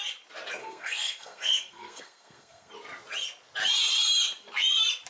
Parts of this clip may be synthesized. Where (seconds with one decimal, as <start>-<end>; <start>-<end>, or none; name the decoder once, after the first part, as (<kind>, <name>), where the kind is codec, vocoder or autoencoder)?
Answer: 0.6-2.7 (codec, SNAC)